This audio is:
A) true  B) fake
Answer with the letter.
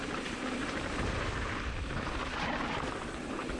B